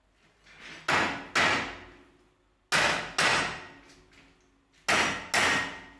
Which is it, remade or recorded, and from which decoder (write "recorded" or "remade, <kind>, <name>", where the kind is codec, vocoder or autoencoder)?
recorded